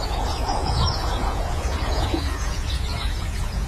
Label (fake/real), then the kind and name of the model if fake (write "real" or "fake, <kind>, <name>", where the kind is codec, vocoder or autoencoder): fake, vocoder, Vocos